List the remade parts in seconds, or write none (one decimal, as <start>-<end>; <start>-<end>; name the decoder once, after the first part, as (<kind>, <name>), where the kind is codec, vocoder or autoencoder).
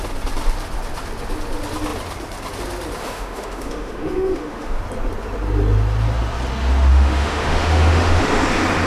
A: 3.0-4.8 (autoencoder, DAC-VAE); 6.9-8.2